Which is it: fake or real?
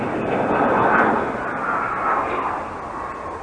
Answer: real